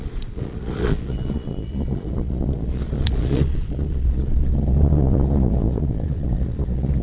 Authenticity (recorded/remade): remade